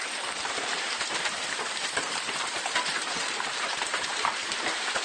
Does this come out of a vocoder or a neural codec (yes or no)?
yes